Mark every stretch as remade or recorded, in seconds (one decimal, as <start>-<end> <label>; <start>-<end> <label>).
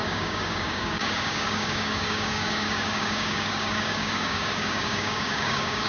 0.0-5.9 remade